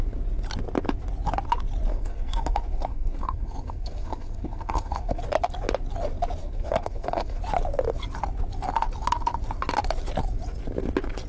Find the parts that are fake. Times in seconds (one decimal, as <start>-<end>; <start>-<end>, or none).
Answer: 1.9-5.2; 6.4-7.4